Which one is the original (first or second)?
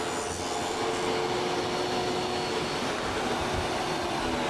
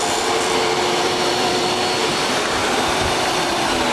first